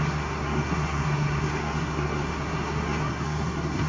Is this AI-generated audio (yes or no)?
yes